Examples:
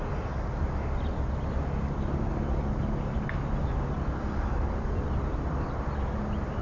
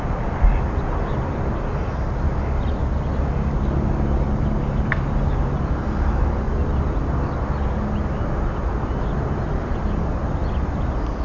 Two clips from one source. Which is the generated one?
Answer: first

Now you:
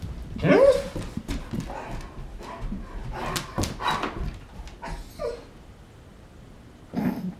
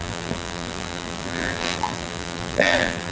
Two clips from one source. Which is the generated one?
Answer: second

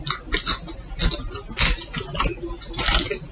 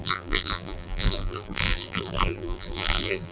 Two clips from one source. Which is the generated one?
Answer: second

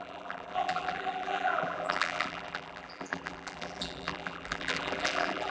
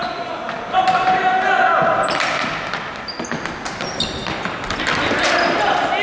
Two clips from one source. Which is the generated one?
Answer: first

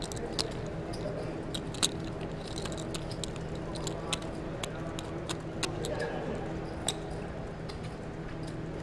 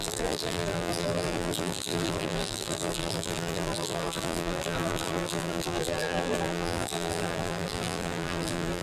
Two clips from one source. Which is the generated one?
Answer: second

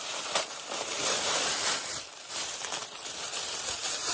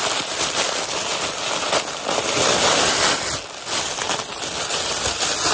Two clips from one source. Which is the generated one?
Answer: first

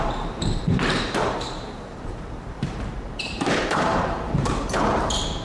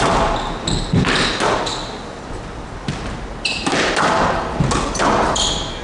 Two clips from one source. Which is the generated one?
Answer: first